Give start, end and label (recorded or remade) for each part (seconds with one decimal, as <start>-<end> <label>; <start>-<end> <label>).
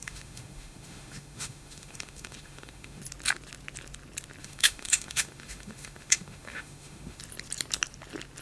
0.0-3.0 remade; 3.0-4.4 recorded; 4.4-7.2 remade; 7.2-8.4 recorded